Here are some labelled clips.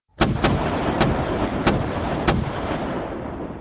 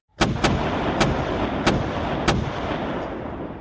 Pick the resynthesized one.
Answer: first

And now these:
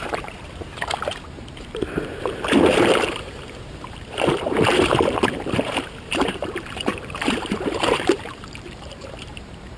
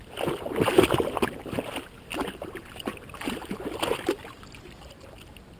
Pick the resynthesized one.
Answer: first